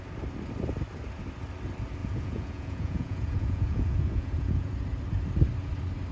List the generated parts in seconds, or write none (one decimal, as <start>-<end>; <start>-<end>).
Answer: 2.0-4.7